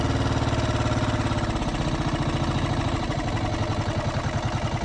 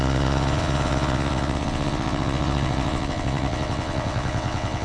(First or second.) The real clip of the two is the first